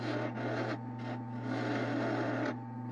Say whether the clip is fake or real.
real